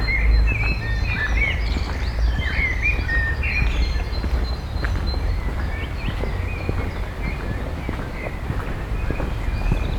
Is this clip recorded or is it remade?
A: recorded